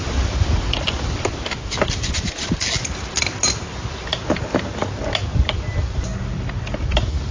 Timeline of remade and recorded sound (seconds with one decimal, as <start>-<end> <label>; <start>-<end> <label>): 0.0-7.3 recorded